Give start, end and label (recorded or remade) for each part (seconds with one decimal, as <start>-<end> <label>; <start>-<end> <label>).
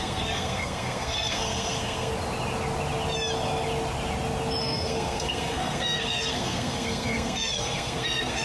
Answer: 0.0-2.1 remade; 2.1-4.6 recorded; 4.6-8.4 remade